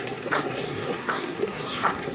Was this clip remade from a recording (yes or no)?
yes